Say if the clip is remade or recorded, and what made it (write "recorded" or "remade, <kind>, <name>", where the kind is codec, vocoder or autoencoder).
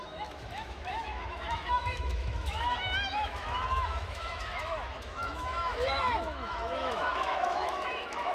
remade, autoencoder, DAC-VAE